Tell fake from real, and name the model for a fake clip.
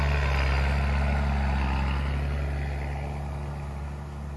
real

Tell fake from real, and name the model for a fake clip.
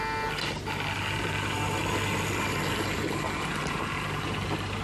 fake, vocoder, BigVGAN v2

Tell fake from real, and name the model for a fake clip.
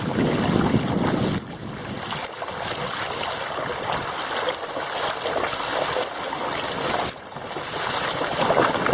real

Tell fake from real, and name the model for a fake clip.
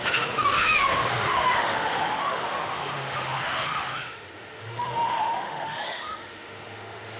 fake, autoencoder, DAC-VAE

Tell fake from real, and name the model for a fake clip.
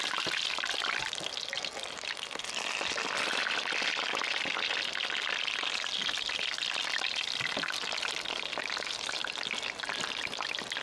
real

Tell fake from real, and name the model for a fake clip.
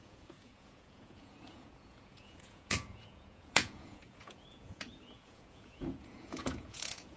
fake, vocoder, Vocos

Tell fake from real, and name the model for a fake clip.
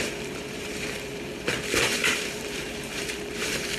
fake, vocoder, BigVGAN v2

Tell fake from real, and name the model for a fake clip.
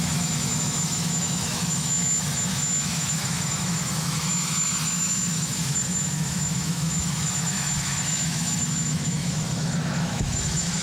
fake, autoencoder, DAC-VAE